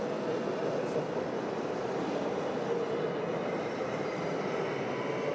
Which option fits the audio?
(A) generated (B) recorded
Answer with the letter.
B